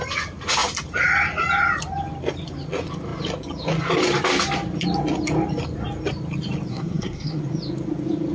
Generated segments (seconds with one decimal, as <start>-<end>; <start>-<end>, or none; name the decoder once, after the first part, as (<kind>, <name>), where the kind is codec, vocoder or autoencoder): 6.7-7.4 (codec, SNAC)